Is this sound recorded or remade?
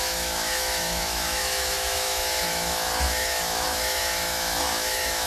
remade